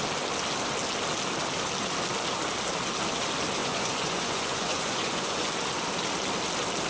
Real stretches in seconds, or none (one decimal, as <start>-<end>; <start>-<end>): 0.0-3.6; 5.5-6.9